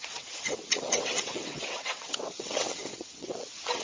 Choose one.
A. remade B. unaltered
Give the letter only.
A